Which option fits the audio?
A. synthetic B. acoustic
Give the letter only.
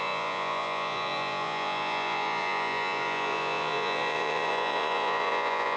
A